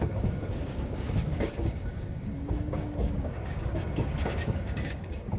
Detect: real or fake fake